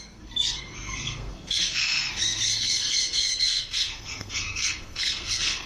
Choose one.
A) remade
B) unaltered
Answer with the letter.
A